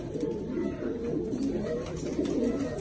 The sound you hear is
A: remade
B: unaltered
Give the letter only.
B